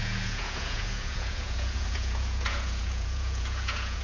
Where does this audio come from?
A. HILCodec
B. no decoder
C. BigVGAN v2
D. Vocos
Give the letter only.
D